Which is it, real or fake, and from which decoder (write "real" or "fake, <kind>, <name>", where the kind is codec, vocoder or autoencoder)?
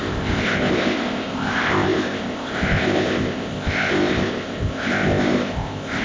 fake, codec, ZipCodec